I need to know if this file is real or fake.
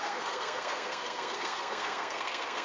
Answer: fake